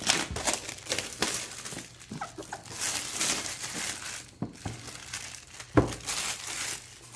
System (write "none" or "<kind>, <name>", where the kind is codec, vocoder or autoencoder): none